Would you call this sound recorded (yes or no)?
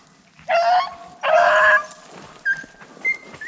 yes